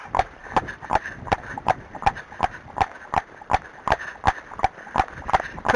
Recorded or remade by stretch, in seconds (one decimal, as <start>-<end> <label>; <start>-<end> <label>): 0.0-0.4 recorded; 0.4-2.0 remade; 2.0-5.8 recorded